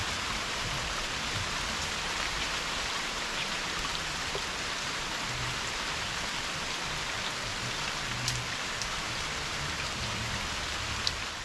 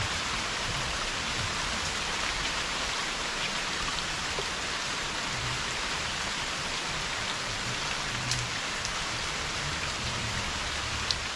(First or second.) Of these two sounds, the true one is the first